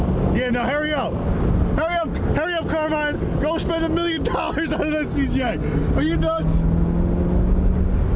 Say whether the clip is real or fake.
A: real